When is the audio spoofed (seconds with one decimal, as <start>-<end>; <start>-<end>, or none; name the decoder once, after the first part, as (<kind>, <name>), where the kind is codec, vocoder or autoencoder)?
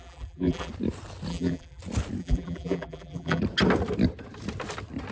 0.0-0.7 (vocoder, BigVGAN v2); 1.3-1.8; 2.2-3.4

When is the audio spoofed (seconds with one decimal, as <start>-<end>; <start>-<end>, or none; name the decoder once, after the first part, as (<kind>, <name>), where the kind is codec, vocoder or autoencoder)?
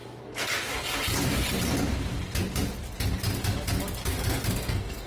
0.0-0.6 (codec, SNAC); 4.0-5.1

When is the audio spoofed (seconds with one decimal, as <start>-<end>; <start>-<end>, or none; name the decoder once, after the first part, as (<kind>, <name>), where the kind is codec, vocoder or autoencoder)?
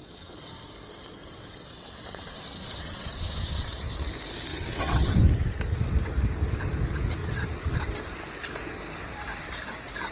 0.0-0.6 (vocoder, WaveNeXt); 1.2-3.7; 4.5-5.2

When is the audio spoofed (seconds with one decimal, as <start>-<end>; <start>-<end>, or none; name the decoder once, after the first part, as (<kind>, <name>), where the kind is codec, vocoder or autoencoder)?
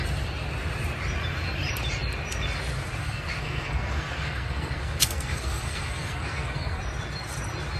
3.0-6.8 (codec, SNAC)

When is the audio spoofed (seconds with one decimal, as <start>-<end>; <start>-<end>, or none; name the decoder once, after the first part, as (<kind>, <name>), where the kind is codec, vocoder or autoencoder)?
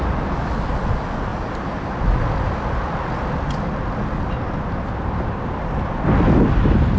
1.3-2.2 (vocoder, BigVGAN v2)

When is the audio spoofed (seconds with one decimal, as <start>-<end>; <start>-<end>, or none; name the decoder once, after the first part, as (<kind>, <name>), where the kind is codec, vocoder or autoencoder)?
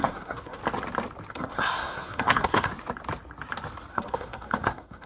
0.0-0.6 (codec, SNAC); 1.3-2.7; 3.9-5.1